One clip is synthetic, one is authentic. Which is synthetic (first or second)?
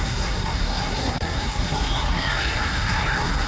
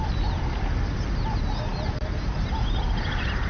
first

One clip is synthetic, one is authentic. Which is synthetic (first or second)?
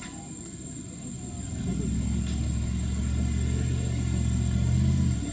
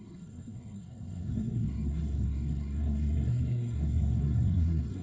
second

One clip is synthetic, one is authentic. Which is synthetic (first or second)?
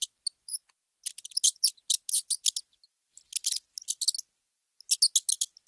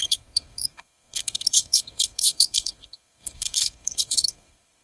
second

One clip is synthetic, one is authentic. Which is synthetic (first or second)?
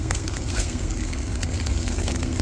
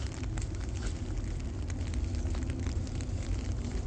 first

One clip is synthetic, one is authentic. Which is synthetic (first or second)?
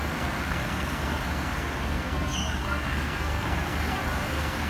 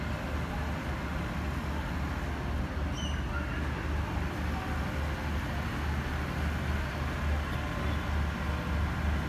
first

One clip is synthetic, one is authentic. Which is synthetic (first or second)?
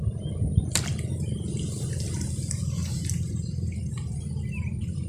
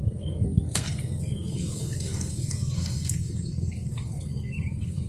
second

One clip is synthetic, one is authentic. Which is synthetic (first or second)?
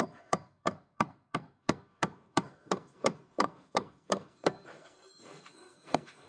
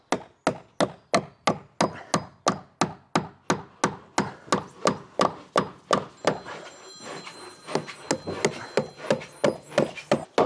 first